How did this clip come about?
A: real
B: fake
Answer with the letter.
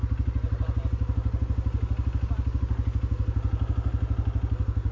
A